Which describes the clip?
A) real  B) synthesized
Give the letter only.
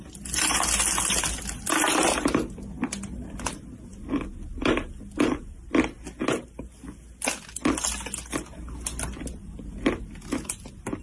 A